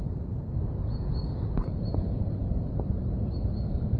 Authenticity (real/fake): fake